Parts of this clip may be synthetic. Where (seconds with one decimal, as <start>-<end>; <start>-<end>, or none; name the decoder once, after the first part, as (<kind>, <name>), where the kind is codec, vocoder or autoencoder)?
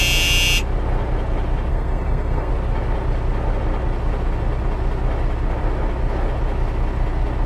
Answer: 1.7-2.5 (codec, SNAC)